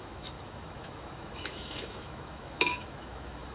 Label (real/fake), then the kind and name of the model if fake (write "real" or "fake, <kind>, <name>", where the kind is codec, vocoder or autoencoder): fake, autoencoder, DAC-VAE